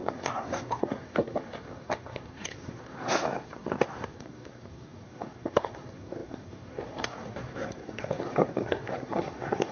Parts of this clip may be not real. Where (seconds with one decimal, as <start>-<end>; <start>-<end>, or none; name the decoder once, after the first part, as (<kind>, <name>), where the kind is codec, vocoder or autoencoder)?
0.0-9.7 (codec, SNAC)